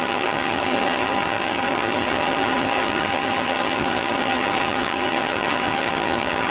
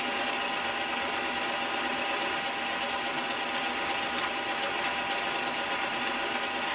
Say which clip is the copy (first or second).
first